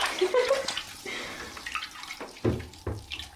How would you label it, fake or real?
real